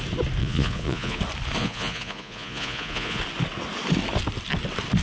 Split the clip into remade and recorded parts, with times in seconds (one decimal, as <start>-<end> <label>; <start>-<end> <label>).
0.0-0.4 recorded; 0.4-1.2 remade; 1.2-1.6 recorded; 1.6-3.2 remade; 3.2-5.0 recorded